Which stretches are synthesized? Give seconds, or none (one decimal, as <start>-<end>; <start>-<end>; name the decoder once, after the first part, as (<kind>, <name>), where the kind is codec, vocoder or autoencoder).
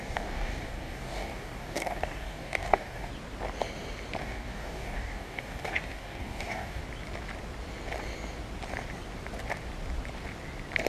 0.0-3.1 (codec, DAC); 4.2-6.8